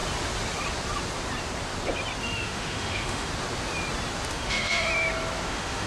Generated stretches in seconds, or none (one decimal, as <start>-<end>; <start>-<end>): 2.2-3.3; 4.3-4.9; 5.5-5.9